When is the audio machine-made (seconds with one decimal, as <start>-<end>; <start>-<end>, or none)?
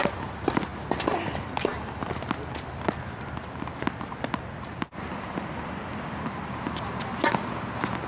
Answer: none